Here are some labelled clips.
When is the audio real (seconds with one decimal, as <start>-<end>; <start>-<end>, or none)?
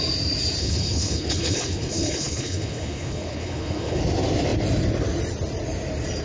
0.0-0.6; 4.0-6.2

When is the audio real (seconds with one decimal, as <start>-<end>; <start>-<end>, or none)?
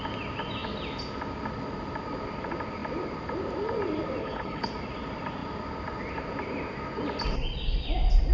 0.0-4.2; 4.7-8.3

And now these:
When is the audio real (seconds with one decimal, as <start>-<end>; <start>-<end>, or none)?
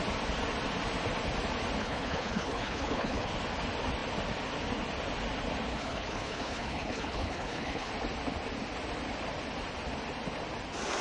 0.0-1.8; 3.3-5.7; 7.9-11.0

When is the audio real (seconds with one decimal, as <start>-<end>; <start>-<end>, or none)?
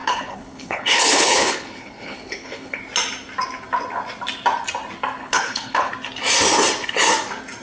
2.8-5.2; 5.9-7.6